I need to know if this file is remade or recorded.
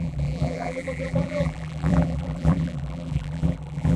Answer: remade